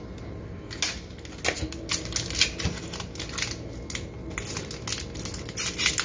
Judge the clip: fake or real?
real